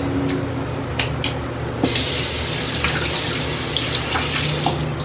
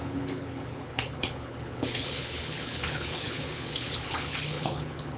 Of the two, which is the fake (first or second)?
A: second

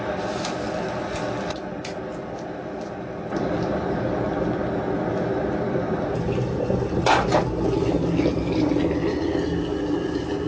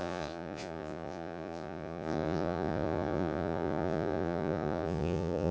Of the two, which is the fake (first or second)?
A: second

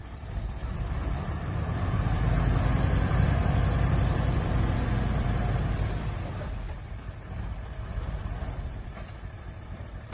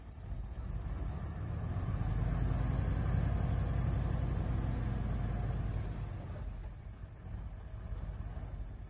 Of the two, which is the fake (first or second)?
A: first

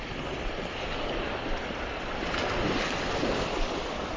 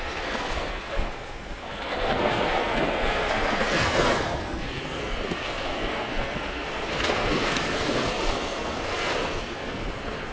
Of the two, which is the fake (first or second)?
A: second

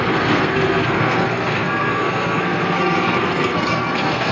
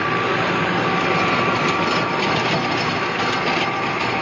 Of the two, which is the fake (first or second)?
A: first